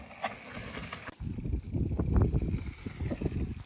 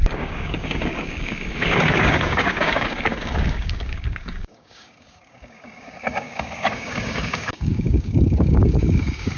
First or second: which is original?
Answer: first